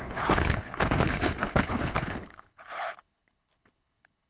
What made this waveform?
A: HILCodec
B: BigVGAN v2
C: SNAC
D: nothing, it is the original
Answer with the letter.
A